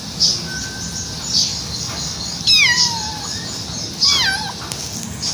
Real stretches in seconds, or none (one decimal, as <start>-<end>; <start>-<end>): 0.0-1.5; 2.4-5.3